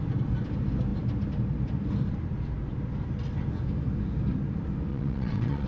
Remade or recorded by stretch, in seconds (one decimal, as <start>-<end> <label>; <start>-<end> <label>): 0.0-4.9 recorded; 4.9-5.7 remade